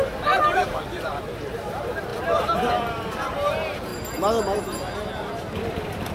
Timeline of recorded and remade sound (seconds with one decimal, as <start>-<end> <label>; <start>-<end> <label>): 0.0-3.9 remade; 3.9-5.6 recorded; 5.6-6.1 remade